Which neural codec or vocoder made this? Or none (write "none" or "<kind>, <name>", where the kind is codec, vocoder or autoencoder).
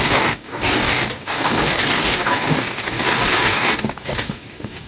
codec, DAC